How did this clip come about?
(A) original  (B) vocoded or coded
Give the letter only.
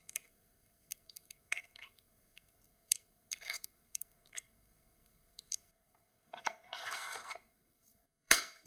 B